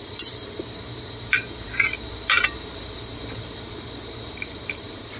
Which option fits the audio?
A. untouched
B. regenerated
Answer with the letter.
B